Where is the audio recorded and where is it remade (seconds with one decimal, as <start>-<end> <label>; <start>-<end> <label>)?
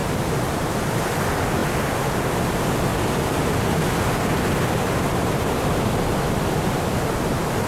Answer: 0.0-0.7 remade; 0.7-1.6 recorded; 1.6-2.2 remade; 2.2-2.9 recorded; 2.9-3.5 remade; 3.5-7.7 recorded